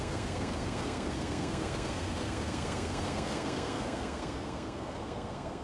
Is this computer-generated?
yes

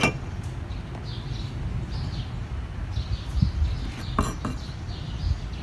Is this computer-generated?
no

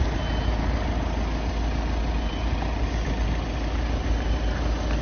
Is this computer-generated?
no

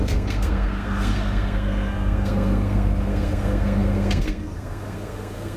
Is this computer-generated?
yes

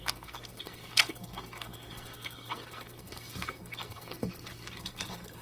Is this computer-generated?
yes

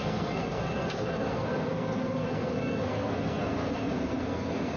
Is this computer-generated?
yes